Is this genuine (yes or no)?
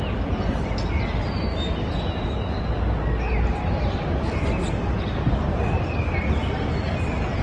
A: yes